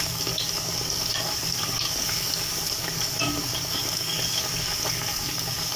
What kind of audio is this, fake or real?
fake